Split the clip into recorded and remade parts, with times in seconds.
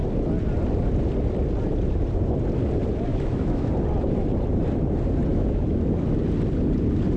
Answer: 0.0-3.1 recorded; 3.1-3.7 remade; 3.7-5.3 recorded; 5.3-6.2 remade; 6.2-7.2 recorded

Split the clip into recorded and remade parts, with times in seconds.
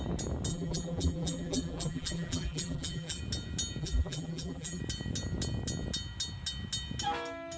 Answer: 0.0-0.5 recorded; 0.5-3.2 remade; 3.2-3.8 recorded; 3.8-4.8 remade; 4.8-7.6 recorded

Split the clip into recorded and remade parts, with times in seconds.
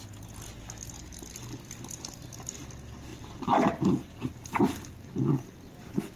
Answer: 0.0-6.2 recorded